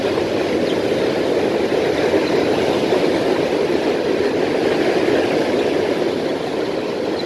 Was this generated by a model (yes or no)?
no